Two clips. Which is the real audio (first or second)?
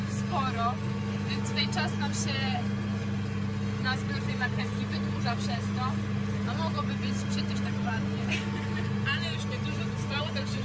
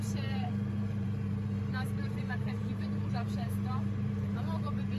first